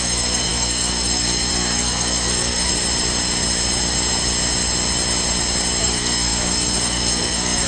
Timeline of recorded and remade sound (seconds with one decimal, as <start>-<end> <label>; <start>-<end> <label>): 0.0-2.7 remade; 2.7-5.8 recorded; 5.8-7.7 remade